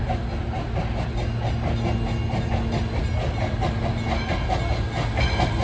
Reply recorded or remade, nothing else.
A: recorded